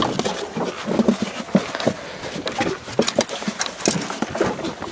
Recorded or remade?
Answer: recorded